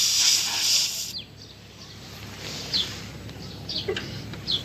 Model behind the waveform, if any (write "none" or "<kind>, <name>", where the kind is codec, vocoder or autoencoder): none